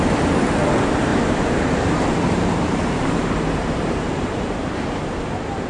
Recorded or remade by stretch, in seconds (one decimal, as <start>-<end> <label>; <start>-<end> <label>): 0.0-5.7 remade